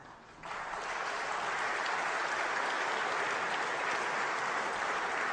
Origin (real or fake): fake